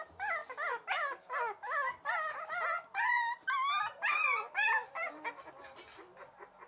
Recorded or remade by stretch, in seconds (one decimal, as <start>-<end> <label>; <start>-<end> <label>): 0.0-6.7 recorded